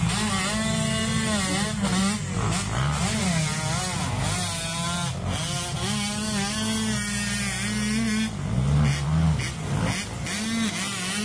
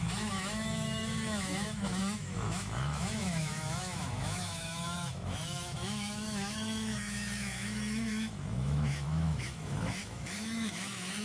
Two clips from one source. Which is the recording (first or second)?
first